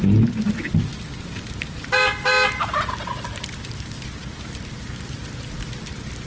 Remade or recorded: recorded